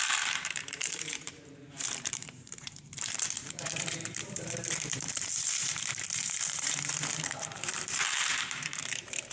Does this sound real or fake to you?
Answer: fake